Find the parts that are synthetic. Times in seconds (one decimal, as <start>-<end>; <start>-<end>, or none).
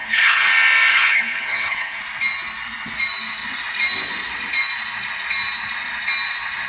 0.0-0.5; 0.9-2.0